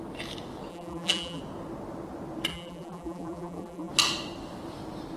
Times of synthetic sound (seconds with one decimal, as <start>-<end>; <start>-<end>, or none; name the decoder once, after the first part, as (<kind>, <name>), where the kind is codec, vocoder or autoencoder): 0.7-1.4 (vocoder, BigVGAN v2); 2.5-3.9